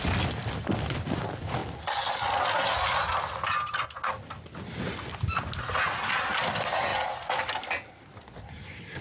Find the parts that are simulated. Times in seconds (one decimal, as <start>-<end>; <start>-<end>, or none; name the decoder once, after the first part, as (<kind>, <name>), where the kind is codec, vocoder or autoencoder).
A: none